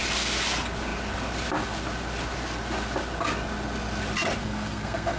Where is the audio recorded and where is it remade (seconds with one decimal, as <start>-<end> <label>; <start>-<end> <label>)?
0.0-4.4 recorded; 4.4-5.2 remade